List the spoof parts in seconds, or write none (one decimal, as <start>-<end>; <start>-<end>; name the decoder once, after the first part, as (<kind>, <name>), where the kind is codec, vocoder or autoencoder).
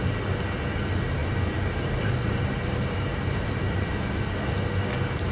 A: 1.2-4.4 (vocoder, BigVGAN v2)